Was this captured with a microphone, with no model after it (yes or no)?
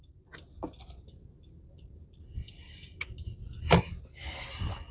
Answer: yes